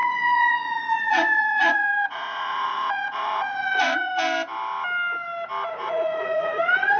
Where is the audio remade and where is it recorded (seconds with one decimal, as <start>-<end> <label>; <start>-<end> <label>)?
0.0-4.1 remade; 4.1-5.7 recorded; 5.7-7.0 remade